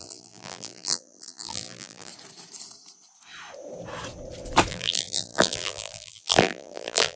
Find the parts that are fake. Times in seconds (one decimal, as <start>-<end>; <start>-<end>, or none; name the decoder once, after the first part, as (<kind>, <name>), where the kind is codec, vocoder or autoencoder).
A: 0.0-2.1 (vocoder, BigVGAN v2); 4.7-7.2